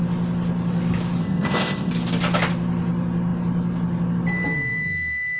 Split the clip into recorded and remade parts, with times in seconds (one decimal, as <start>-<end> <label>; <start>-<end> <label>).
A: 0.0-1.2 recorded; 1.2-1.9 remade; 1.9-5.4 recorded